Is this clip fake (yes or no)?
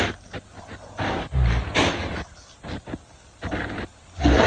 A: no